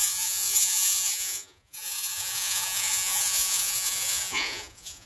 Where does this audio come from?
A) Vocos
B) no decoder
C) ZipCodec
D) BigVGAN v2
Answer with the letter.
A